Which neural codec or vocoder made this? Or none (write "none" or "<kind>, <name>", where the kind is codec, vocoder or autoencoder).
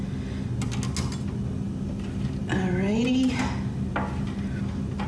none